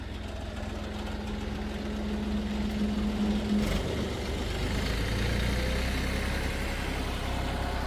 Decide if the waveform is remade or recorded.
recorded